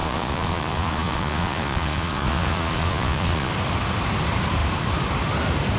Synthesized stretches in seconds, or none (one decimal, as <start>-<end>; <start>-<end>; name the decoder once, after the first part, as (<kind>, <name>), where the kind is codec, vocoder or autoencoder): 0.0-3.5 (vocoder, Vocos)